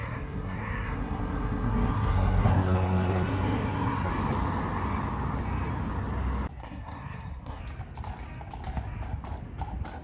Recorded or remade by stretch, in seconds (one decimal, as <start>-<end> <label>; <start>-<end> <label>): 0.0-4.1 remade; 4.1-6.6 recorded; 6.6-7.6 remade; 7.6-10.0 recorded